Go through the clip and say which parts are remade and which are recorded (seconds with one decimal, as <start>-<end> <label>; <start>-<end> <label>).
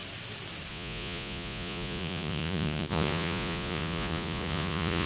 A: 0.0-0.7 recorded; 0.7-5.1 remade